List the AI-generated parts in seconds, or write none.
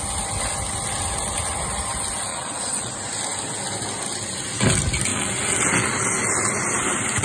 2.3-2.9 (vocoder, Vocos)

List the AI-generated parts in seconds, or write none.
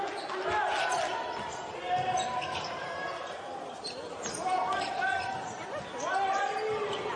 none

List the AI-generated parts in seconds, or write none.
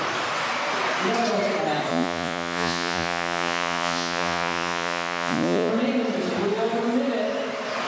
1.9-5.7 (vocoder, Vocos)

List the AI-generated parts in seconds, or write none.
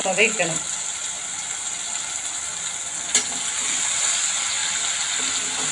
0.0-2.2 (vocoder, BigVGAN v2)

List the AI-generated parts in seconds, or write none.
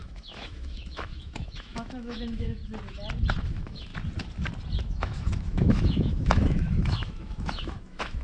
0.0-2.6 (autoencoder, DAC-VAE); 3.5-3.9; 4.8-8.2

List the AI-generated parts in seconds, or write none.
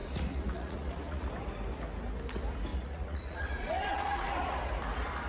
0.0-1.3 (vocoder, Vocos); 2.7-4.6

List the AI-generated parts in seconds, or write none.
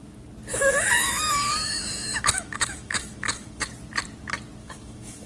0.5-3.7 (autoencoder, DAC-VAE); 4.6-5.3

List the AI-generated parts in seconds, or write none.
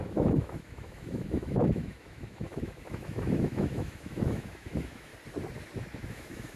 0.0-5.1 (autoencoder, DAC-VAE); 5.8-6.6